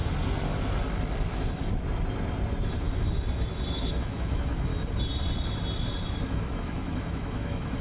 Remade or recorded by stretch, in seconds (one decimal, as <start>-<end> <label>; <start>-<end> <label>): 0.0-3.7 recorded; 3.7-4.7 remade; 4.7-6.3 recorded; 6.3-7.8 remade